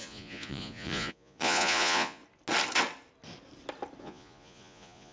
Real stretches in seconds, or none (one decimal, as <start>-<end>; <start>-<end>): 2.2-4.0